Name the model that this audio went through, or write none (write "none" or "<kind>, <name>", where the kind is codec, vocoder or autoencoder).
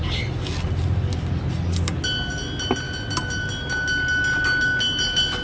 none